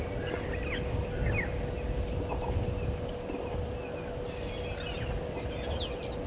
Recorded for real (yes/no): yes